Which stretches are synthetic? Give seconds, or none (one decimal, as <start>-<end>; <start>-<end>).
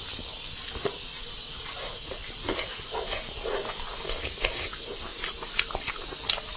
1.1-1.7